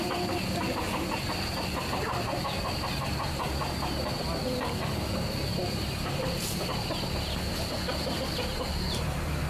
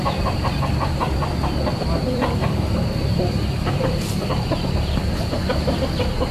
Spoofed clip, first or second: second